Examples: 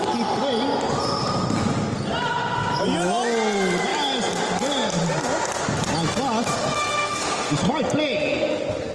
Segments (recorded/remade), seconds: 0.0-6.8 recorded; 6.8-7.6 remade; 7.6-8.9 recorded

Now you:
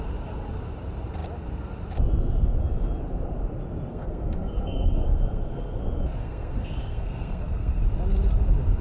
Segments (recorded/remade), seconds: 0.0-3.9 recorded; 3.9-5.8 remade; 5.8-6.2 recorded; 6.2-7.8 remade; 7.8-8.8 recorded

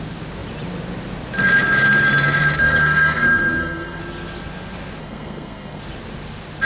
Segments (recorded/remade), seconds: 0.0-2.6 recorded; 2.6-4.0 remade; 4.0-5.0 recorded; 5.0-5.8 remade; 5.8-6.6 recorded

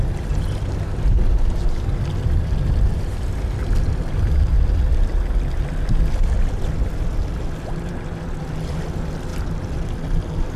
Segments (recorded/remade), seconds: 0.0-10.6 recorded

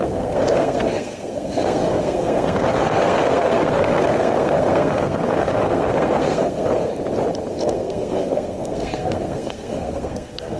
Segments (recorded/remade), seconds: 0.0-6.9 remade; 6.9-7.5 recorded; 7.5-10.6 remade